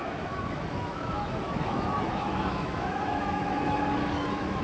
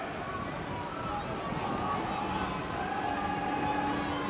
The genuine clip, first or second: second